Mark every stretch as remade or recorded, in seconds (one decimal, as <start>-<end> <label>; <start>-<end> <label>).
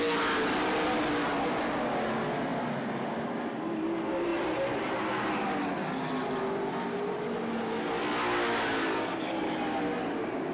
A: 0.0-10.5 recorded